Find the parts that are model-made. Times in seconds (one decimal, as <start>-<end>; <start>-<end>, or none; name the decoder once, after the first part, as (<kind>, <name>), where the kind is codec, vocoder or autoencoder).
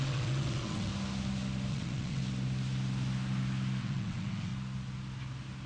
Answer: 0.0-0.9 (vocoder, WaveNeXt); 1.7-2.2; 3.8-4.5